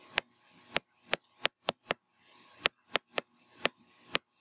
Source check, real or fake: real